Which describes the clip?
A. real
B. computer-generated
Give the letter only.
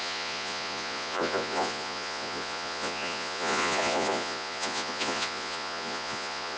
B